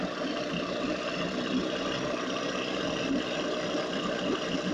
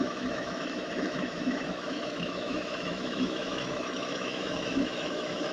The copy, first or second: second